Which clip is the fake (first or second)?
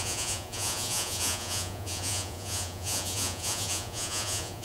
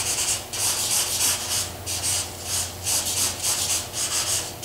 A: first